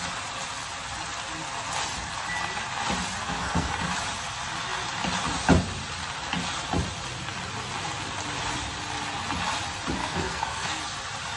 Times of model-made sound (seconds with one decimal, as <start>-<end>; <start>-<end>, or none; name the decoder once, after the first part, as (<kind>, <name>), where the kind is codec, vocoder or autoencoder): 3.2-3.9 (codec, SNAC); 10.0-10.8